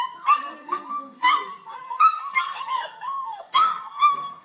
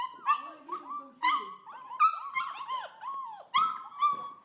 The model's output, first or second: first